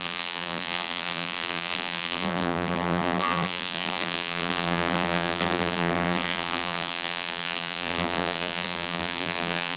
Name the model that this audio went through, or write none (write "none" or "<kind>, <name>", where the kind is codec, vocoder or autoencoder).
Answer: vocoder, BigVGAN v2